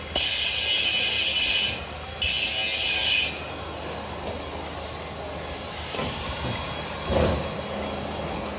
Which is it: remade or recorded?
recorded